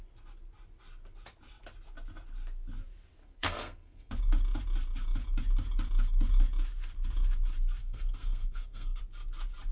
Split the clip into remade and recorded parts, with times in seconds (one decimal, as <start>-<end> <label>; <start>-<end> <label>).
0.0-3.2 recorded; 3.2-4.1 remade; 4.1-7.8 recorded; 7.8-9.0 remade; 9.0-9.7 recorded